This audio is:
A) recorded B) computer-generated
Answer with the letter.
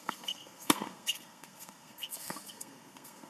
B